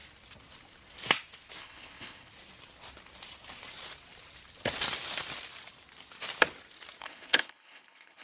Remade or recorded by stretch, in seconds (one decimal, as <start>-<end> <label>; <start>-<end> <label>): 0.0-1.6 recorded; 1.6-2.3 remade; 2.3-7.0 recorded; 7.0-8.2 remade